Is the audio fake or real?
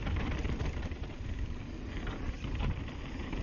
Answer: real